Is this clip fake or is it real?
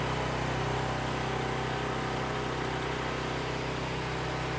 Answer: real